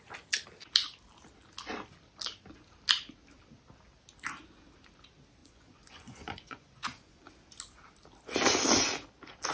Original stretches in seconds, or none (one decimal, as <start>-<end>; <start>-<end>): 0.0-5.4; 7.3-9.5